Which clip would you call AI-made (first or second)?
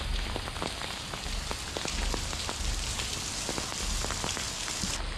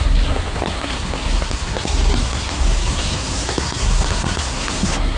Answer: second